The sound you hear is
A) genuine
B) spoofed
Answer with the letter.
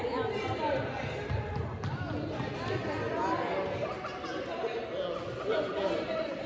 A